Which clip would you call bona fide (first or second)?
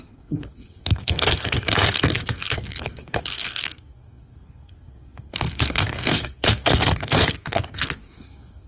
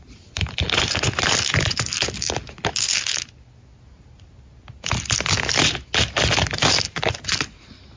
second